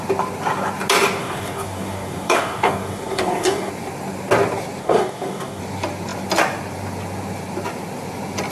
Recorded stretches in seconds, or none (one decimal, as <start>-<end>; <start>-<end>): 0.0-1.2; 3.7-4.8; 5.6-8.5